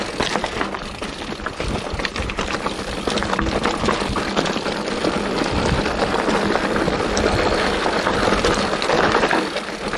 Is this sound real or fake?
fake